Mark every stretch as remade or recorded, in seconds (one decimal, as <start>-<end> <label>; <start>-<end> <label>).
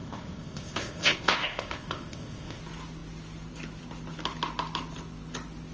0.0-2.6 remade; 2.6-5.7 recorded